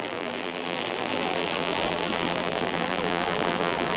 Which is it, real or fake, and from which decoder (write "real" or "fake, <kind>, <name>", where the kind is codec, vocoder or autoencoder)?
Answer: fake, vocoder, BigVGAN v2